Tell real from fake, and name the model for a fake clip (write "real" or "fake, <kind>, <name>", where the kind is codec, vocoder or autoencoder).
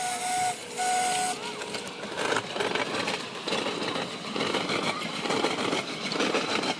real